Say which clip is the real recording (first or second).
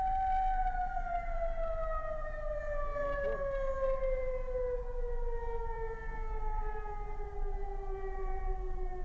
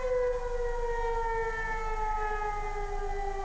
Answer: second